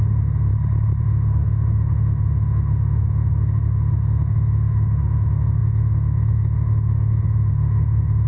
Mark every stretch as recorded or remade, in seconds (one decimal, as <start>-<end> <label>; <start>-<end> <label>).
0.0-0.5 remade; 0.5-1.0 recorded; 1.0-8.3 remade